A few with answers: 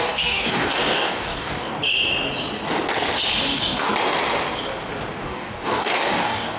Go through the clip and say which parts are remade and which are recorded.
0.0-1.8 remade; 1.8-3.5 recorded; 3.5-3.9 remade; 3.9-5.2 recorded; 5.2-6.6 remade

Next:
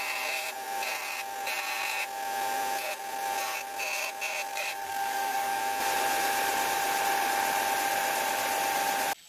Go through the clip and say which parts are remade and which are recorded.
0.0-4.5 recorded; 4.5-5.6 remade; 5.6-9.3 recorded